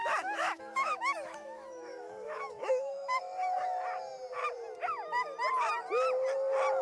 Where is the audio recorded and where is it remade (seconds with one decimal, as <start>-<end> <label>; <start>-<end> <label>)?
0.0-3.2 remade; 3.2-6.8 recorded